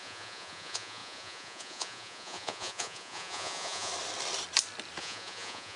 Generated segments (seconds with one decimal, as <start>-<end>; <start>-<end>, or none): 0.0-3.9; 5.0-5.8